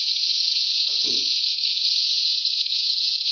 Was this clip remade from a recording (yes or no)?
yes